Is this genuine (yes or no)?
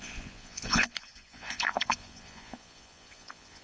no